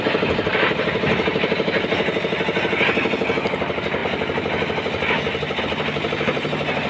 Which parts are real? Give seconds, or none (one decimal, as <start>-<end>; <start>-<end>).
0.0-6.9